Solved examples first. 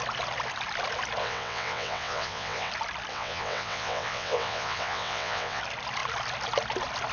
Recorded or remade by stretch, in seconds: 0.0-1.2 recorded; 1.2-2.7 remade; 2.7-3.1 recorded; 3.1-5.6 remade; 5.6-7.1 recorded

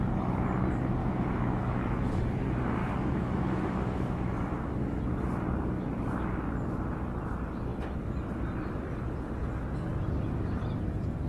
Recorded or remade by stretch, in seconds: 0.0-1.0 recorded; 1.0-2.2 remade; 2.2-2.8 recorded; 2.8-5.0 remade; 5.0-11.3 recorded

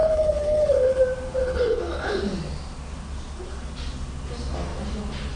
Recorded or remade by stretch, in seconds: 0.0-1.0 remade; 1.0-1.4 recorded; 1.4-2.2 remade; 2.2-5.4 recorded

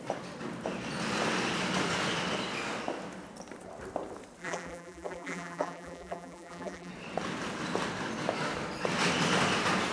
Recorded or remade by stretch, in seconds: 0.0-4.4 recorded; 4.4-6.9 remade; 6.9-9.9 recorded